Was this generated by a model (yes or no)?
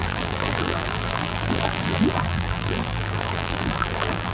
yes